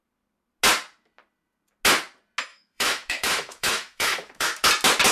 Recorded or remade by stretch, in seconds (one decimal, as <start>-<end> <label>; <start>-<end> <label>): 0.0-2.5 recorded; 2.5-4.5 remade; 4.5-5.1 recorded